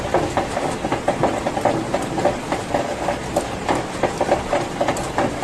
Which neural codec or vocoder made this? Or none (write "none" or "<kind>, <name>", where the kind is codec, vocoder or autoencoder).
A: none